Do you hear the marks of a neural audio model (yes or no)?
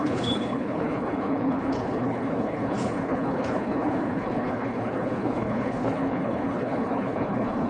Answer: yes